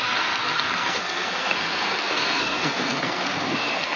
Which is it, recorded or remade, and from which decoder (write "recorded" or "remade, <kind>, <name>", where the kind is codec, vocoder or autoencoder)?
remade, codec, SNAC